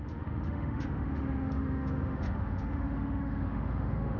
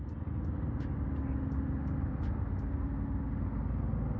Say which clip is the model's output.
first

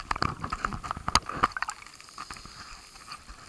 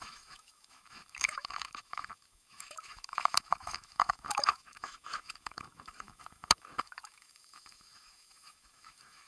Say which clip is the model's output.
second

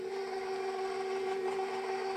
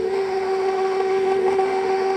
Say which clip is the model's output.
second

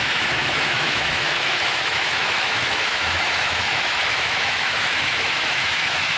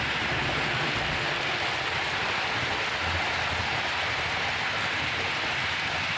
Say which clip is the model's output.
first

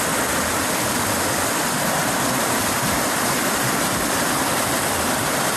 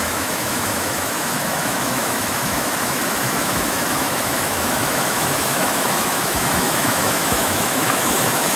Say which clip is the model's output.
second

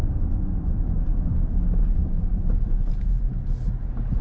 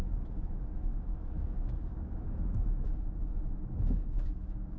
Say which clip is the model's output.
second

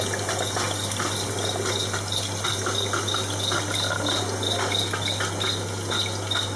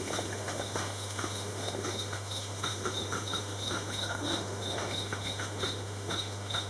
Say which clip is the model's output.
second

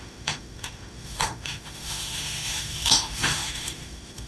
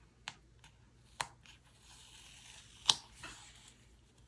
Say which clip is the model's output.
first